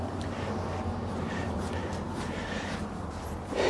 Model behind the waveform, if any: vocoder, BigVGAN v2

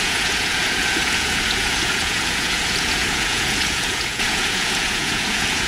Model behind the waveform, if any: vocoder, Vocos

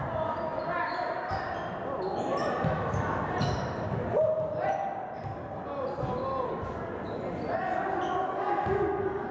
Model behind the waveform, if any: none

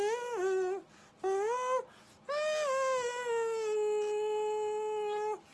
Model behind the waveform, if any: none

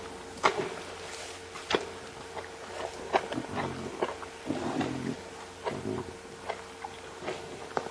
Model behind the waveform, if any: none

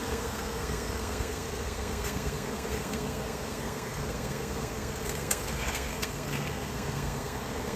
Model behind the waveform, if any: codec, SNAC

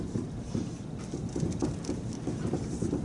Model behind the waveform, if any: none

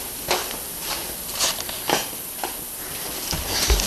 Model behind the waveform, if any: none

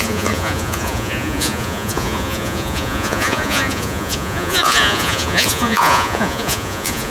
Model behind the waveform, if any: vocoder, Vocos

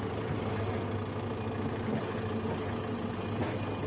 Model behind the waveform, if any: none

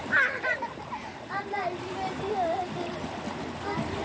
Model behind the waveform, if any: none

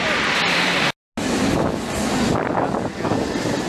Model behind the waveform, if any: none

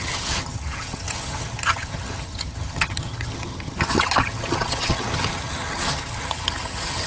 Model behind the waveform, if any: vocoder, HiFi-GAN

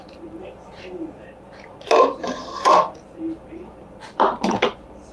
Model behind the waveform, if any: vocoder, BigVGAN v2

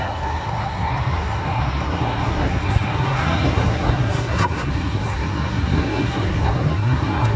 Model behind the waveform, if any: codec, SNAC